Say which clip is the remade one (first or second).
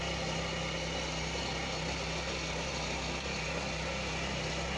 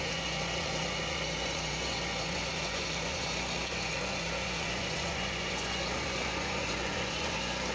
second